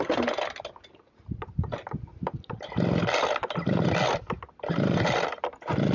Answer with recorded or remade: recorded